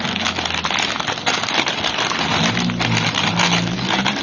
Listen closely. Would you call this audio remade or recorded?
recorded